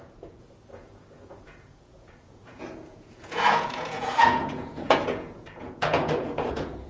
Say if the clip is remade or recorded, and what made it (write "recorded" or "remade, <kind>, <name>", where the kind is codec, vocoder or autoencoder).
remade, vocoder, Vocos